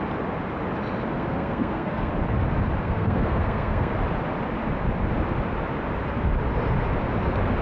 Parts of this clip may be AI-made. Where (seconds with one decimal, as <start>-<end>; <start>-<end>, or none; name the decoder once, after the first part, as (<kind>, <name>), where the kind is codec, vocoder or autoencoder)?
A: 1.1-2.1 (codec, SNAC); 2.8-3.9